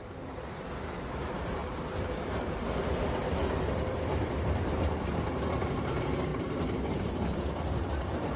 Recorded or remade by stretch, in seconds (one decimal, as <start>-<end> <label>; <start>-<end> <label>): 0.0-1.6 remade; 1.6-3.9 recorded; 3.9-8.4 remade